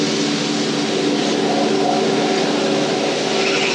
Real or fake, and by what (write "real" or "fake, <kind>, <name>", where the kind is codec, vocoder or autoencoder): real